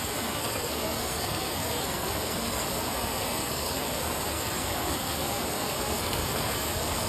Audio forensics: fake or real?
fake